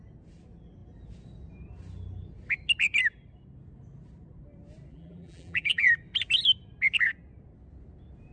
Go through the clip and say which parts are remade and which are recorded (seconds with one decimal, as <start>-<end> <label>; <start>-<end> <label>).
0.0-4.9 recorded; 4.9-5.9 remade; 5.9-8.3 recorded